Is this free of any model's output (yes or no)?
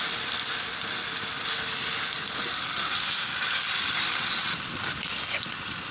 yes